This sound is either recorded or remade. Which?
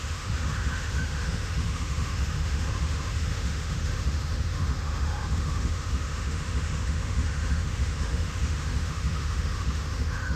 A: remade